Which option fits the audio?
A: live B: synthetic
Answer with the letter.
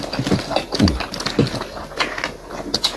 A